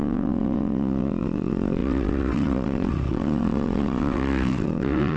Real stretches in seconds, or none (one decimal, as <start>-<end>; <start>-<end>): none